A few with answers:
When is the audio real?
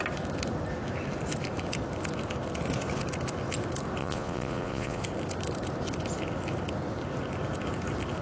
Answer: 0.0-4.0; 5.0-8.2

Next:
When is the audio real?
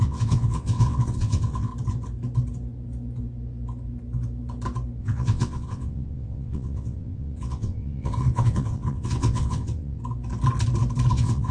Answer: 1.7-5.0; 10.0-11.1